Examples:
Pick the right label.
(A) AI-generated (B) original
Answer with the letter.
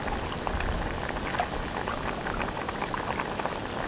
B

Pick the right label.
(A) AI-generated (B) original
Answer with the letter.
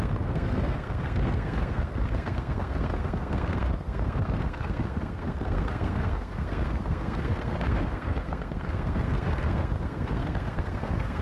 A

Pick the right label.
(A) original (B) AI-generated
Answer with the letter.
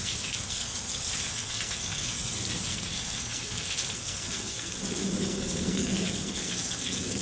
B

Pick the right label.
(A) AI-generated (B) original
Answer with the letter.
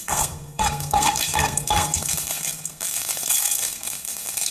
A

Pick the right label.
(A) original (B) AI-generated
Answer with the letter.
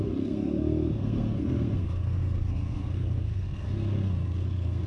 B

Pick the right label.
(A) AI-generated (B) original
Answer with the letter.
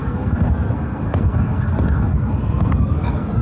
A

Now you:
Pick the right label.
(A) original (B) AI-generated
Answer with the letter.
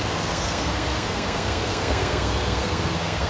B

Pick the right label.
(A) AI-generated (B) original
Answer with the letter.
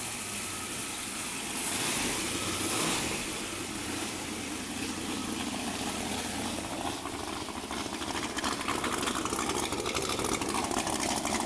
B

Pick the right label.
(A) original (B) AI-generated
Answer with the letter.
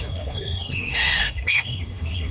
B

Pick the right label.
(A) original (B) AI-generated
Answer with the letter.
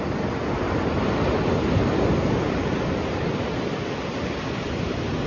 A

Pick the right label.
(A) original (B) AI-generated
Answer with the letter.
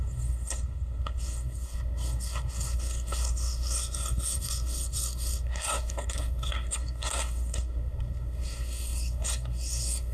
B